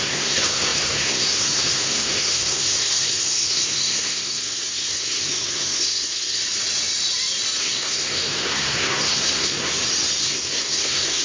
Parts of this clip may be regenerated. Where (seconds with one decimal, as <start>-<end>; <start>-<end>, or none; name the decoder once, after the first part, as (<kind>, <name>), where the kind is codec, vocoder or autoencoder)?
0.0-6.4 (codec, SNAC); 7.6-9.7; 10.2-11.2